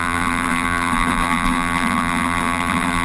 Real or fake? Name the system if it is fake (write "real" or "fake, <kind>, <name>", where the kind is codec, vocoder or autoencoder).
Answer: fake, vocoder, BigVGAN v2